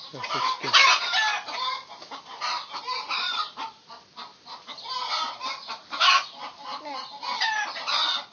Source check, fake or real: real